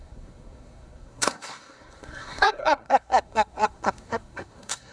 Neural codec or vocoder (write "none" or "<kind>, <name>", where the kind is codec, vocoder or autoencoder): codec, SNAC